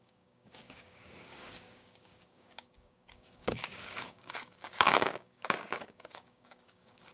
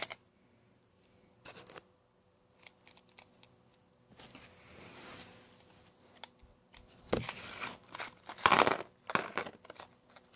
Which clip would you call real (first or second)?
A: second